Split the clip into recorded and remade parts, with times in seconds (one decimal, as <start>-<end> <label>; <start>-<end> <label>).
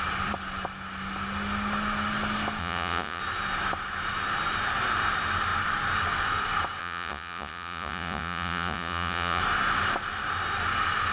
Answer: 0.0-2.6 recorded; 2.6-3.2 remade; 3.2-6.8 recorded; 6.8-9.4 remade; 9.4-11.1 recorded